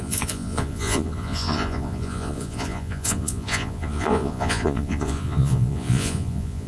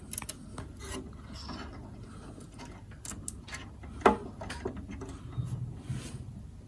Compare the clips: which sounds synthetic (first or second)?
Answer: first